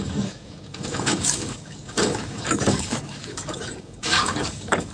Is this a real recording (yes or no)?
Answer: no